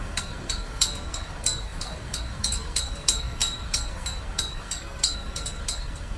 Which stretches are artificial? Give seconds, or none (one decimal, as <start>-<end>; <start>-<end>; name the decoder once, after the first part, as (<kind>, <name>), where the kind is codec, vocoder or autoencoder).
0.0-6.2 (codec, SNAC)